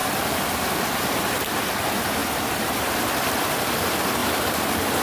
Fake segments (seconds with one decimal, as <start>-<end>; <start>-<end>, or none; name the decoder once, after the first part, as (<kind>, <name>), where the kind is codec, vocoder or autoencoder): 2.2-3.0 (vocoder, BigVGAN v2); 4.2-5.0